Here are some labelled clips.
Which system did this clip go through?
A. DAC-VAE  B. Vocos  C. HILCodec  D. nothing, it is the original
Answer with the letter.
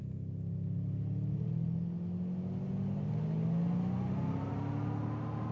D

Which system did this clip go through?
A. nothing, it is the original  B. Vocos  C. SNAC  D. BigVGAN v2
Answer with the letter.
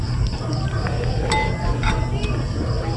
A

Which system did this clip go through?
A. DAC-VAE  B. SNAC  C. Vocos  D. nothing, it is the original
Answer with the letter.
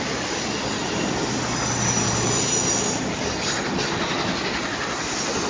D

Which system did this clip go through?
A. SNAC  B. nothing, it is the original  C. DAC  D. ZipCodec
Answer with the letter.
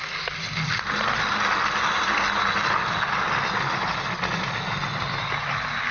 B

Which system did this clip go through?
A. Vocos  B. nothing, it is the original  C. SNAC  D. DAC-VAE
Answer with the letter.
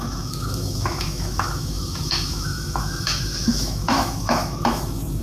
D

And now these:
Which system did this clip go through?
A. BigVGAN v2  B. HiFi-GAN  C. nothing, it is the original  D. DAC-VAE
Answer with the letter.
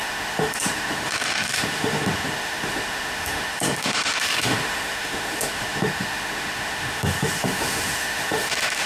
D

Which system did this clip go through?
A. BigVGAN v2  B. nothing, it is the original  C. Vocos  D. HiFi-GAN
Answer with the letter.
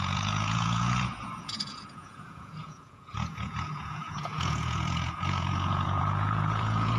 C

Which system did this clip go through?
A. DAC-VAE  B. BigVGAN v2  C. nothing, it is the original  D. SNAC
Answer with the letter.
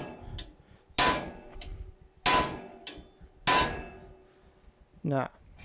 C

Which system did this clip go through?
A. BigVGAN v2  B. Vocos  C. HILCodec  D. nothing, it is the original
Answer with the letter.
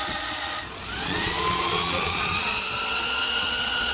B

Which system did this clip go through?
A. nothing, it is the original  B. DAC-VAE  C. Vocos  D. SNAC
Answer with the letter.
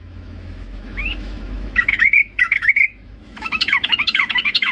B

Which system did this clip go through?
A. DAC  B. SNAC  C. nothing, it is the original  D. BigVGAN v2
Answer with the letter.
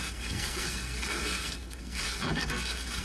B